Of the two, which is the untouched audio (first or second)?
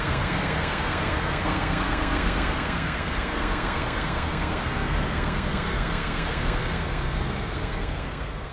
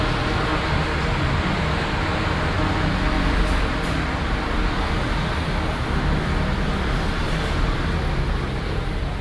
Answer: second